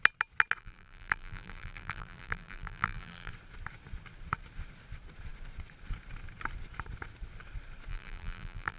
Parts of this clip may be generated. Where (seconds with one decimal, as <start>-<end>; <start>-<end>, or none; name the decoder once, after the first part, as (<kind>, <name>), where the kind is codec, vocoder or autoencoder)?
0.6-3.3 (vocoder, BigVGAN v2); 7.9-8.8